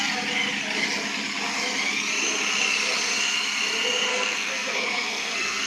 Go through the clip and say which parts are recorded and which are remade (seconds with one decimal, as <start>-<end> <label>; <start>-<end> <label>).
0.0-4.1 recorded; 4.1-5.7 remade